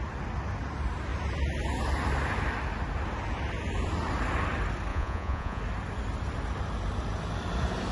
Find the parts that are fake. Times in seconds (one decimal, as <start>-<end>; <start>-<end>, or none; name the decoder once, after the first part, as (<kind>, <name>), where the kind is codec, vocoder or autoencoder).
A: 4.9-5.6 (vocoder, Vocos)